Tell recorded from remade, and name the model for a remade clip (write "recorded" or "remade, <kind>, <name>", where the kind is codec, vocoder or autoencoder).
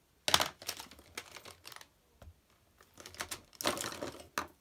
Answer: recorded